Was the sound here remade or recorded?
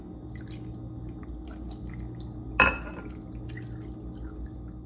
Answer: recorded